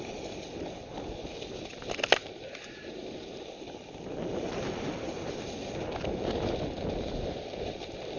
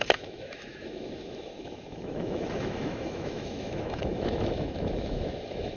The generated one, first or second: second